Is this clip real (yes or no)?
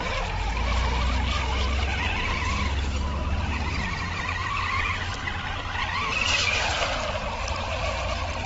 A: yes